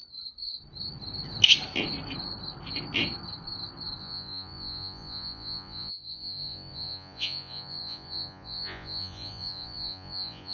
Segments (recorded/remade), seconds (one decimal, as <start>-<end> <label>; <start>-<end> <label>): 0.0-4.0 recorded; 4.0-10.5 remade